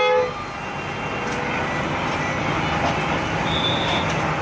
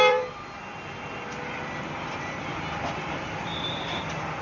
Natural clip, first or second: first